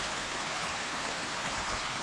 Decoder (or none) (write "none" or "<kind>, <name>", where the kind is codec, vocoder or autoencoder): codec, HILCodec